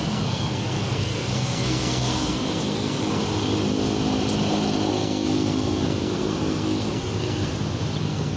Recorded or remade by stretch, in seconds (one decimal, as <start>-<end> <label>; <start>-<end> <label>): 0.0-3.2 remade; 3.2-4.9 recorded; 4.9-7.5 remade; 7.5-8.0 recorded; 8.0-8.4 remade